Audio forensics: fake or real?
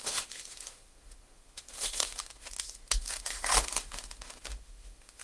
fake